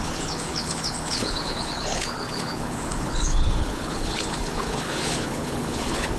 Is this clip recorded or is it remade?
remade